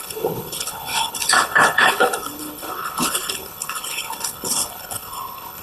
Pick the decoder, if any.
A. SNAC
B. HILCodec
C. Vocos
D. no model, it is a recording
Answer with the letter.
B